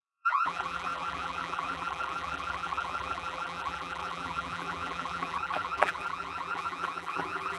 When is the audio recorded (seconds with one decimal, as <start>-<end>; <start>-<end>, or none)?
none